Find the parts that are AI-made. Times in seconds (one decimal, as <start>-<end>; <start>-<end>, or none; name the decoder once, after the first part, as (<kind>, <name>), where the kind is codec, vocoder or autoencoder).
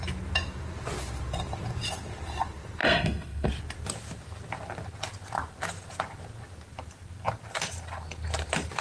2.8-3.5 (codec, SNAC)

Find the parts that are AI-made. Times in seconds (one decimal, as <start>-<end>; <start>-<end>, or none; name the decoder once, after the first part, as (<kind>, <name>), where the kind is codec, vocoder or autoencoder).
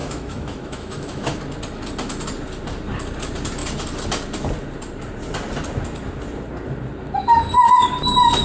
0.0-1.4 (autoencoder, DAC-VAE)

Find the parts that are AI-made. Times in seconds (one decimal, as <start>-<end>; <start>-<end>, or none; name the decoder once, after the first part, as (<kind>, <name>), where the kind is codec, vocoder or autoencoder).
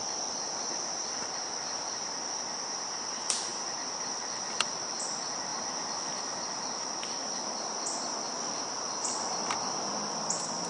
none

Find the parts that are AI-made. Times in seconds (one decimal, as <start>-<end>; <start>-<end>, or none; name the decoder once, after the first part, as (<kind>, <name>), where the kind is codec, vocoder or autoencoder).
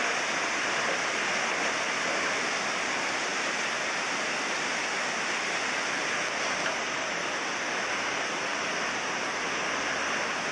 none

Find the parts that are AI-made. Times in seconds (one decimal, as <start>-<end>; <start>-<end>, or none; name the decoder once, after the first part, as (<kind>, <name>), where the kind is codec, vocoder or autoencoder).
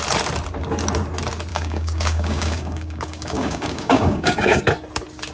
1.5-4.7 (codec, DAC)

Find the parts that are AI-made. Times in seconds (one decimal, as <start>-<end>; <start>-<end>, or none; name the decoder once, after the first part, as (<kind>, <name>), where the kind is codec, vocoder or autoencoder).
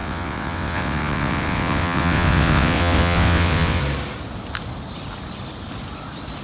0.0-3.8 (vocoder, WaveNeXt)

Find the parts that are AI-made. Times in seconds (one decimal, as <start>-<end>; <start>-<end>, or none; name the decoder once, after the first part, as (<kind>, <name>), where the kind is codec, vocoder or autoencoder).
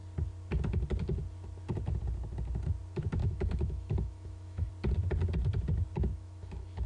3.2-4.7 (autoencoder, DAC-VAE); 6.1-6.9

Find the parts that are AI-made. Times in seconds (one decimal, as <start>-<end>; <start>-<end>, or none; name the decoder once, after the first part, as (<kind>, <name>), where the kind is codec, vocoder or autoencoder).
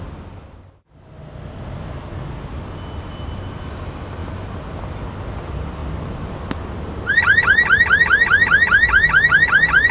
none